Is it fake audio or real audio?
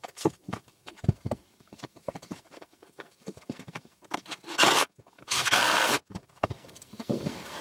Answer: fake